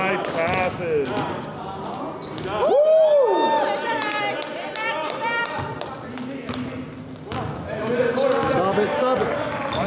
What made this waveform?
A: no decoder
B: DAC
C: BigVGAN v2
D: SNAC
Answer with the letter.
A